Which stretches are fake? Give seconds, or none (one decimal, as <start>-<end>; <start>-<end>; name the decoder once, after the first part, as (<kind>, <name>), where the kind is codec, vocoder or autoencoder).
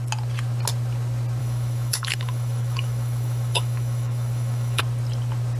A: 1.4-4.8 (autoencoder, DAC-VAE)